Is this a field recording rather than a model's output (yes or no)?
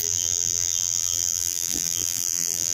no